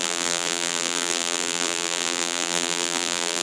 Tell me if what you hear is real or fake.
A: fake